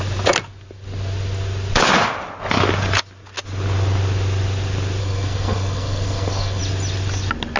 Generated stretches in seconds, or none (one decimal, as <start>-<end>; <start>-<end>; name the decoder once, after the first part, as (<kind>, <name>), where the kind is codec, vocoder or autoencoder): 5.0-6.6 (codec, SNAC)

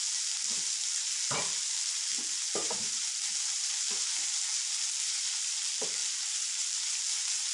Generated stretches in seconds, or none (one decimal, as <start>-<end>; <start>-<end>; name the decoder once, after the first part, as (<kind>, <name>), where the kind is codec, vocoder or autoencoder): 2.6-5.6 (vocoder, BigVGAN v2); 6.0-7.0

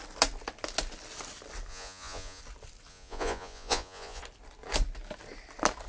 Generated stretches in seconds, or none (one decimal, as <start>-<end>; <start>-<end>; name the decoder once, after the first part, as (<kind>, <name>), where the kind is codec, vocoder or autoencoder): 1.7-2.4 (vocoder, Vocos); 2.9-4.2

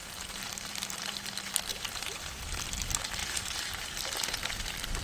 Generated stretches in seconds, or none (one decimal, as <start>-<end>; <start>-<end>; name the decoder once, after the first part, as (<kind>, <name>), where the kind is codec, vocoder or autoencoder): 0.0-1.0 (vocoder, BigVGAN v2); 1.7-2.4; 3.2-3.7

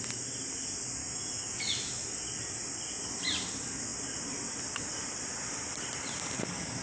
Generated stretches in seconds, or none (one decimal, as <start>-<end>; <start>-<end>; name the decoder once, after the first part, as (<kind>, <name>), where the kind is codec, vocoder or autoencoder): 1.0-1.9 (autoencoder, DAC-VAE)

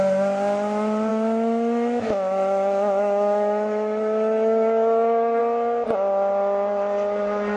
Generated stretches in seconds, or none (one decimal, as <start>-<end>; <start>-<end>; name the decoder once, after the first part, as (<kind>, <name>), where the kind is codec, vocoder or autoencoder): 1.1-5.4 (autoencoder, DAC-VAE)

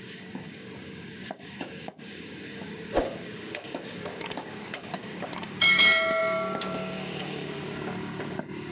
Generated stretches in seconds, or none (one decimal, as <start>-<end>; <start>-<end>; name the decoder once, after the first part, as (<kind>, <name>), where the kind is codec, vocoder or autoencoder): 0.0-8.7 (codec, DAC)

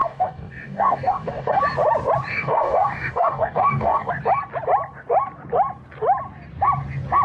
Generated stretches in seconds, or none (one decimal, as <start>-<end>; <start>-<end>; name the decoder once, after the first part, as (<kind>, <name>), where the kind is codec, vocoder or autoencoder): 0.0-1.6 (codec, DAC); 2.3-4.1